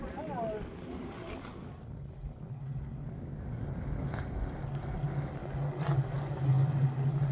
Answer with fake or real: real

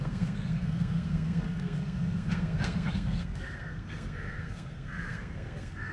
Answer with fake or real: fake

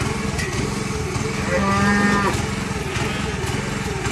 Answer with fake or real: real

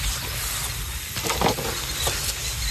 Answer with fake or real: real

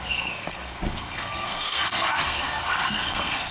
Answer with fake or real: fake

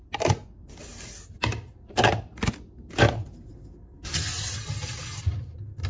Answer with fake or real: real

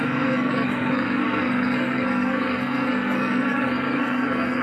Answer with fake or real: fake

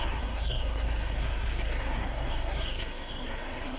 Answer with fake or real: fake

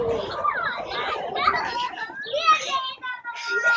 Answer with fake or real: real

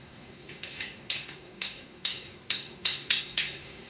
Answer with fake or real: fake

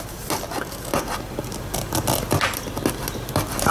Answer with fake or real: real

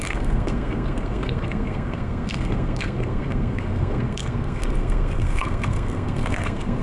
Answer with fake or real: fake